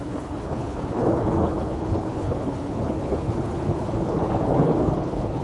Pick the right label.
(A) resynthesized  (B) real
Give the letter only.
A